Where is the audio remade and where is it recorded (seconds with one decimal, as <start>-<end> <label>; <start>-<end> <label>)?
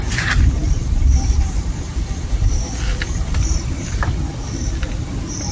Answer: 0.0-2.4 remade; 2.4-3.8 recorded; 3.8-4.4 remade; 4.4-4.9 recorded; 4.9-5.5 remade